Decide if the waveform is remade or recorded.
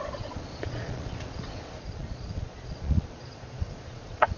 remade